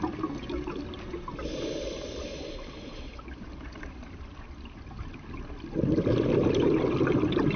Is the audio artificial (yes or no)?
no